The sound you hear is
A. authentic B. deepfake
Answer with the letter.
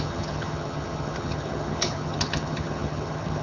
B